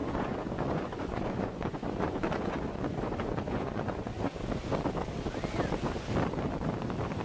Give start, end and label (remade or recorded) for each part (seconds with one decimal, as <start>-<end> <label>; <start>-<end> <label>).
0.0-4.3 remade; 4.3-7.2 recorded